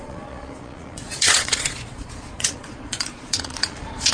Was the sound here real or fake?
fake